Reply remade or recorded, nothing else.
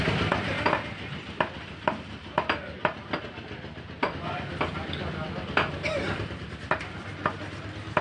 recorded